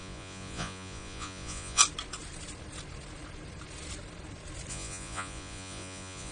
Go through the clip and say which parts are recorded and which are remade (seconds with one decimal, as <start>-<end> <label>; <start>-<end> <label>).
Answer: 0.0-1.8 remade; 1.8-4.7 recorded; 4.7-6.3 remade